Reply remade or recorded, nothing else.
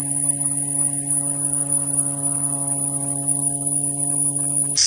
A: recorded